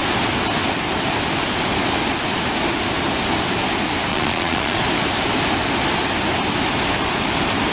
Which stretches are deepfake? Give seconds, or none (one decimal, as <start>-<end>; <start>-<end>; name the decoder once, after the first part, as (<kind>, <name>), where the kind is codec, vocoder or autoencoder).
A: 4.1-4.8 (vocoder, Vocos)